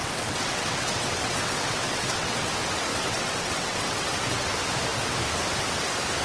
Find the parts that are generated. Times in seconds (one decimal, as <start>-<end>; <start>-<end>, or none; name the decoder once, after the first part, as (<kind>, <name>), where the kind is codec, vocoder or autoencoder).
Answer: 0.0-2.5 (vocoder, WaveNeXt); 2.9-4.5